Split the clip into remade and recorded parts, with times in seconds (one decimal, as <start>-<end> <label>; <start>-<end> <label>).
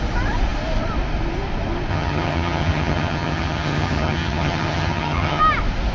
0.0-1.9 recorded; 1.9-5.4 remade; 5.4-5.9 recorded